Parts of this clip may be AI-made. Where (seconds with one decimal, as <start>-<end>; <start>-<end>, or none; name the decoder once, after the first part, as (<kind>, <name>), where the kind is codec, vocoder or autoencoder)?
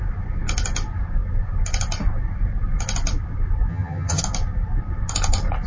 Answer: 3.7-4.2 (vocoder, HiFi-GAN)